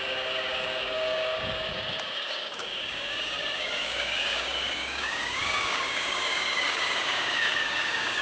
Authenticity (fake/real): fake